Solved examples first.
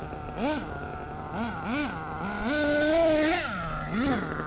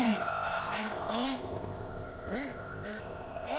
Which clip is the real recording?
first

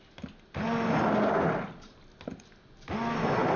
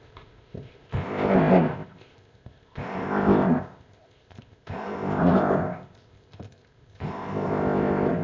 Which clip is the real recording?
first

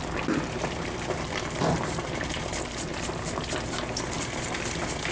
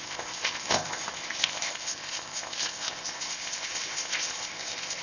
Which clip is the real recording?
first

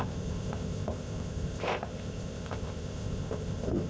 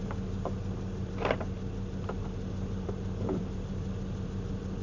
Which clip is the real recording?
second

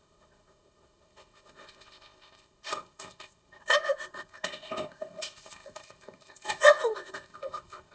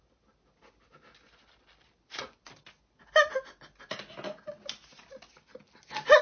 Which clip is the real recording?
second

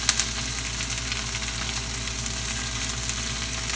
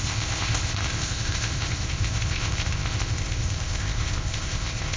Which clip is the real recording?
first